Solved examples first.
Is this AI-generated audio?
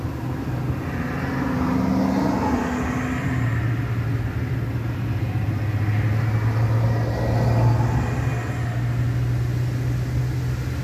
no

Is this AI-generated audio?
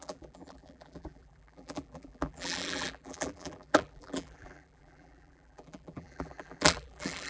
yes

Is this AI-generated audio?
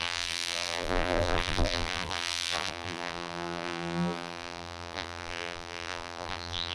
yes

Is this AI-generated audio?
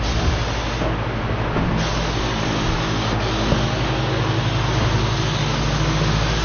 no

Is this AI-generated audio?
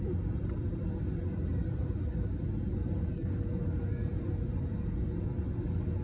no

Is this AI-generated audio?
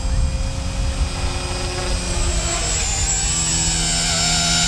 no